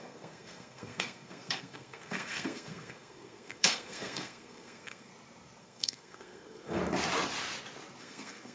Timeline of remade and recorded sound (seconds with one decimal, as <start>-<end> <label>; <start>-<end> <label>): 0.0-5.1 remade; 5.1-5.6 recorded; 5.6-6.8 remade; 6.8-8.0 recorded; 8.0-8.5 remade